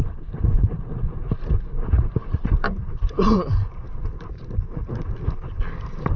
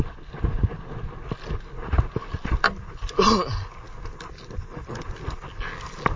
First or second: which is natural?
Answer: second